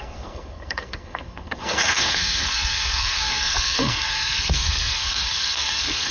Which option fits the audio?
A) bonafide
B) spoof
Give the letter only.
B